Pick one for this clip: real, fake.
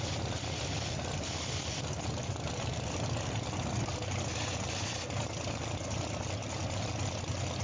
real